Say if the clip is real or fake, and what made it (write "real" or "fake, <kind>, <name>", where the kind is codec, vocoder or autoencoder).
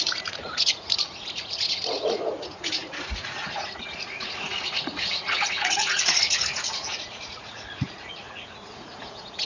fake, vocoder, Vocos